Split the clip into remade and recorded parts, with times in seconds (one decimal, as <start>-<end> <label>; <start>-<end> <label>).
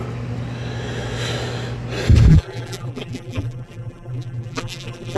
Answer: 0.0-2.3 recorded; 2.3-5.2 remade